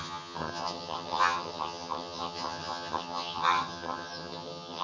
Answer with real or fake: fake